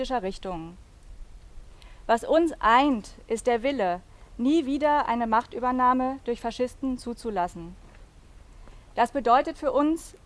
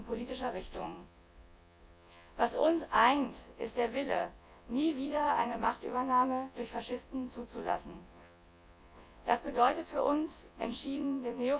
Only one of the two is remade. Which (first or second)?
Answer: second